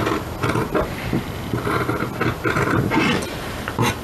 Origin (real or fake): real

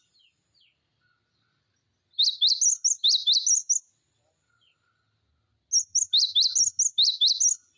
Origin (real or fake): real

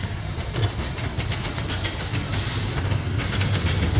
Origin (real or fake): real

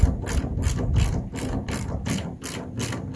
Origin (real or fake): real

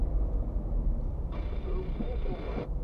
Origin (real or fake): fake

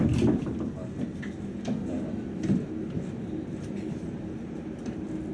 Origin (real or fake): real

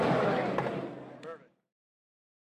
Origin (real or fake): real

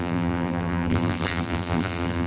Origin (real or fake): fake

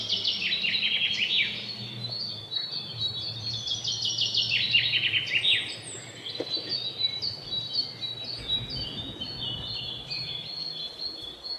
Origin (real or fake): real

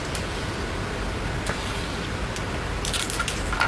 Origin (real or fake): real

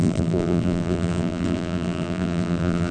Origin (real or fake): fake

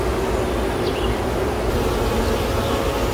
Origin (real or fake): real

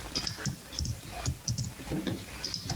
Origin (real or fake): fake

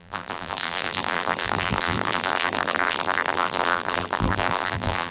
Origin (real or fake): fake